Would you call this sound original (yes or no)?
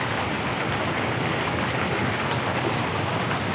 yes